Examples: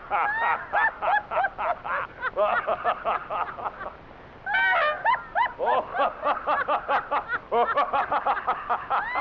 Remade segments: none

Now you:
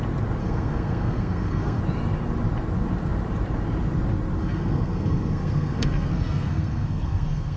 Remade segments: 0.4-1.8 (codec, SNAC); 4.4-7.6

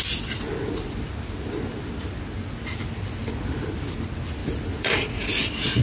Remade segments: 2.8-3.9 (vocoder, BigVGAN v2); 4.4-5.3

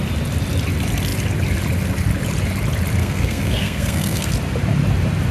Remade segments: 3.0-4.3 (codec, SNAC)

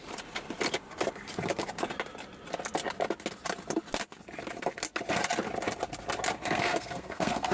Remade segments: 6.4-7.5 (codec, SNAC)